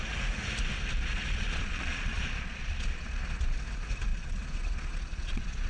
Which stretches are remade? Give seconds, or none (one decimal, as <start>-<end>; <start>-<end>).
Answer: 1.1-3.4; 4.1-5.7